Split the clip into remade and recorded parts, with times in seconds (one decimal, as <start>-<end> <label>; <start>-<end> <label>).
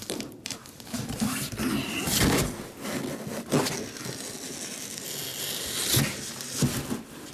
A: 0.0-1.2 remade; 1.2-7.3 recorded